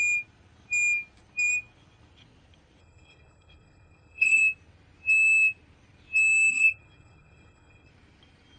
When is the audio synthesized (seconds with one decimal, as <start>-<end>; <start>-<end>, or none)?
2.8-4.4; 6.5-7.9